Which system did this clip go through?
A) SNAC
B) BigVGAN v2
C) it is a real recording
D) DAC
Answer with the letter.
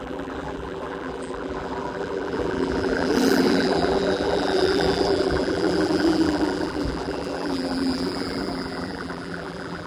B